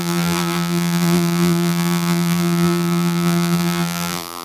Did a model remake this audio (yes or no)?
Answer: yes